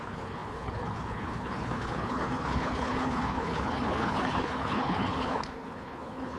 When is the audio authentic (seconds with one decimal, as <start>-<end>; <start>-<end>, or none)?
none